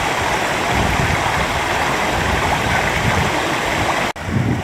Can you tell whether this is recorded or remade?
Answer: recorded